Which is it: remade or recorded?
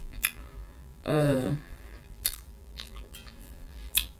remade